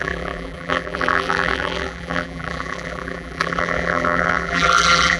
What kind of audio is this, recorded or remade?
remade